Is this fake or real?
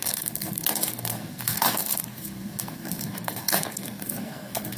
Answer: fake